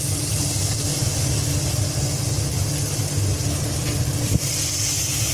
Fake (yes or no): no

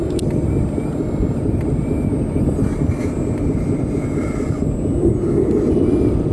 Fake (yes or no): no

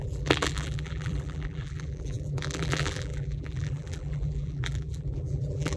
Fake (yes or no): yes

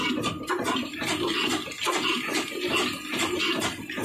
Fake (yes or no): no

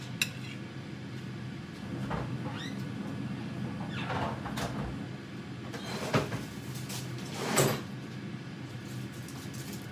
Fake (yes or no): no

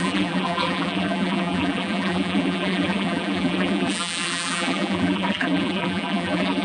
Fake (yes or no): yes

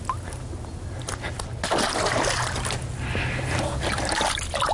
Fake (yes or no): no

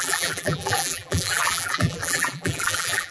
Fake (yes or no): yes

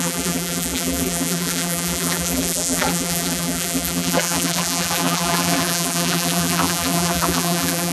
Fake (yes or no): yes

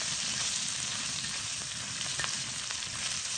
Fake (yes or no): yes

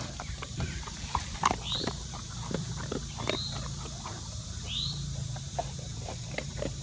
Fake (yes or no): yes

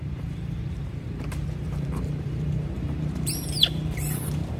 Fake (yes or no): yes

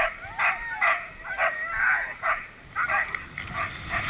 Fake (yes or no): no